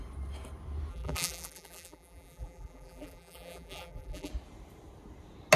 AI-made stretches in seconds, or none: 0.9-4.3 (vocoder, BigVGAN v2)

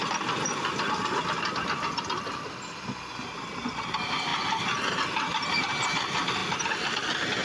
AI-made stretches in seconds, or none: none

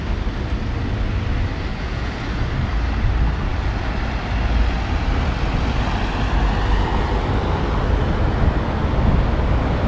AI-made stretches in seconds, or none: 1.7-2.2 (vocoder, Vocos)

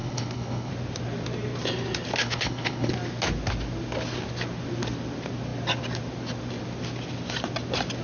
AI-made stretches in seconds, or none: 0.0-0.7 (codec, HILCodec); 2.2-2.9

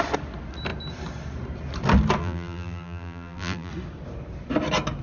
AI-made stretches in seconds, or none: 2.2-3.7 (vocoder, BigVGAN v2)

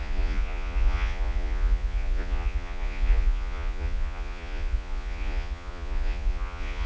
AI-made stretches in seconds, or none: 0.0-6.9 (vocoder, Vocos)

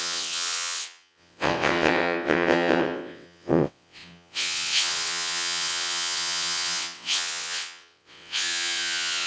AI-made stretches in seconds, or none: 0.0-9.3 (vocoder, WaveNeXt)